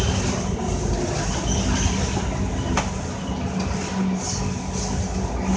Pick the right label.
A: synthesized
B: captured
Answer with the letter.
B